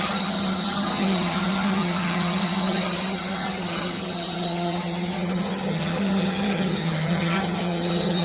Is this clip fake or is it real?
fake